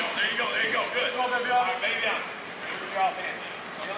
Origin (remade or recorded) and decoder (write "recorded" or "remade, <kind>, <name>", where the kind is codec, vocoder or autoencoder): recorded